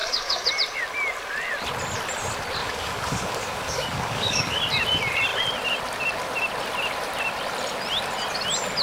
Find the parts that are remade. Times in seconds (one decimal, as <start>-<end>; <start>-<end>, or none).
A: 0.0-0.5; 2.6-4.6